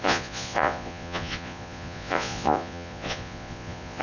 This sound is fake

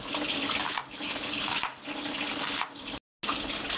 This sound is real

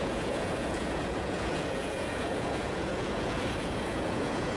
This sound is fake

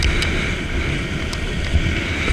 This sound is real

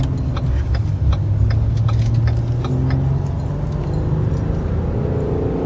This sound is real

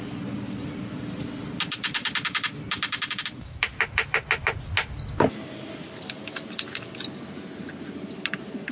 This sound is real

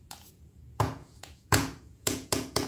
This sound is fake